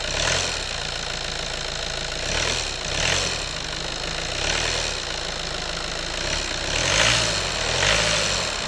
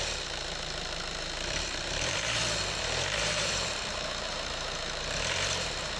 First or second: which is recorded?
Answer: first